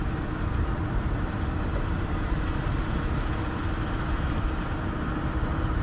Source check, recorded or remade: remade